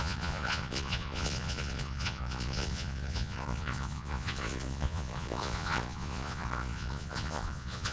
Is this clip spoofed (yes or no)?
yes